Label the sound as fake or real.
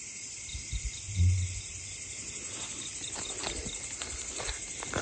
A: real